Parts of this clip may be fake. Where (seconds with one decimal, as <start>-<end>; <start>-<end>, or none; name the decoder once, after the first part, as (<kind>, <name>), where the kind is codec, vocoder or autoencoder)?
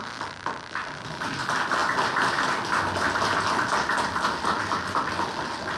none